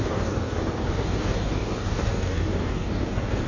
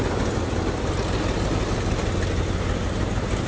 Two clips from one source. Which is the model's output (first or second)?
first